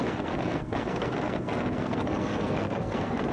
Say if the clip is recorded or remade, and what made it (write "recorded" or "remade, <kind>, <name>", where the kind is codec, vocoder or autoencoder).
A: remade, codec, SNAC